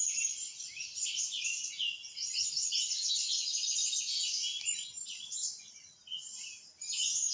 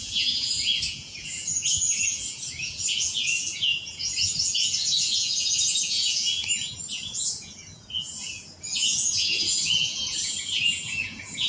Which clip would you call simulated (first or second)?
second